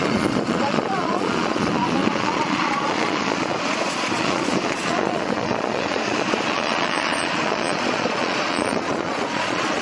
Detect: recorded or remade remade